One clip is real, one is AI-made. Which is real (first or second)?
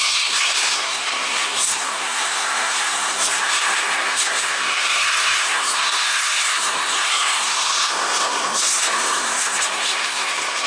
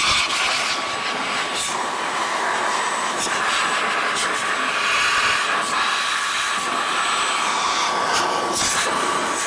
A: second